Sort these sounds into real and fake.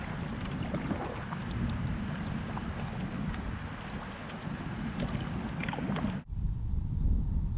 real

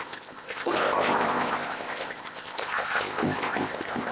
fake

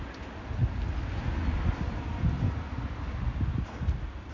real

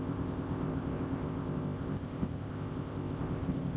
fake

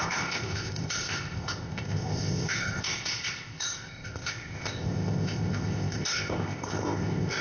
fake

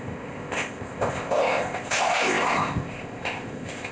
fake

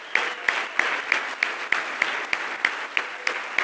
real